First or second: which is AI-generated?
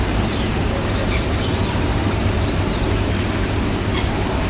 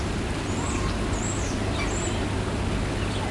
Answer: first